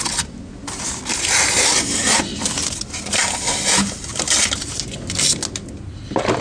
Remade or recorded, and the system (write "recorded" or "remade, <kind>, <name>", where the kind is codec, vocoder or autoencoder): recorded